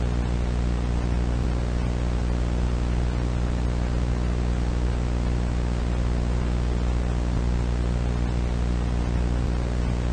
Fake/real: real